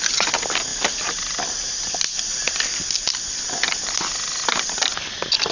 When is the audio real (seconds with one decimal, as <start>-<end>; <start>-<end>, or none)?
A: 0.0-0.7; 4.0-5.5